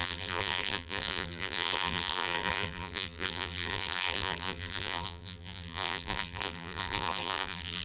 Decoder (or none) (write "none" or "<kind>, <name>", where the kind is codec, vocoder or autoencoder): vocoder, BigVGAN v2